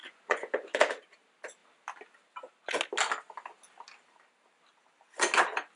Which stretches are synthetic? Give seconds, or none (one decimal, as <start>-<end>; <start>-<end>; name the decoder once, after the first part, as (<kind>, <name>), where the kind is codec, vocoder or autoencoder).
0.0-0.8 (vocoder, Vocos)